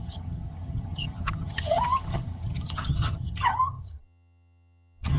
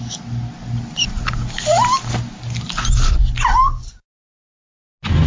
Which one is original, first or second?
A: second